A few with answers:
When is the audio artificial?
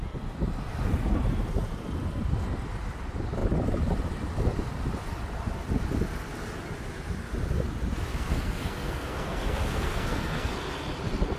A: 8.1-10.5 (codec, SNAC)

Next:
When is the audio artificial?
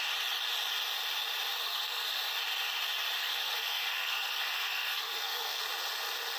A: 1.6-2.2 (codec, SNAC); 3.2-5.6